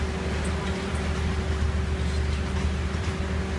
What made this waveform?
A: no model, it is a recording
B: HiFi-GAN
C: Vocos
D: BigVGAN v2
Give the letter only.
A